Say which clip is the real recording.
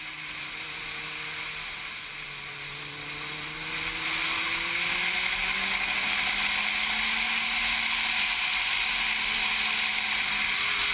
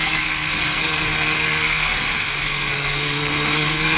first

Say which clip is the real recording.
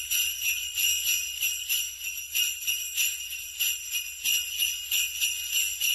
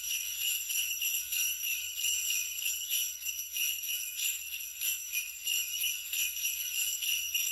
first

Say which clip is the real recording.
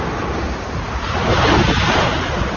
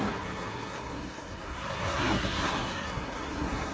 first